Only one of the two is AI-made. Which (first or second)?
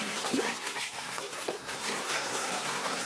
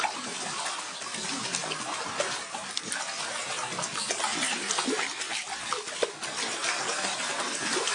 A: first